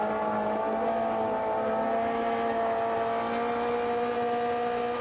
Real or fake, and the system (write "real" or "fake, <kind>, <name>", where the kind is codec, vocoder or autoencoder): real